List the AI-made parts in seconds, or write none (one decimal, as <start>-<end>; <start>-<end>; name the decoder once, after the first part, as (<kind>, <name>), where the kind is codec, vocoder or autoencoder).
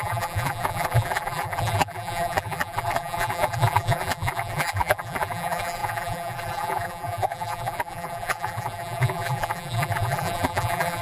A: 0.0-11.0 (vocoder, BigVGAN v2)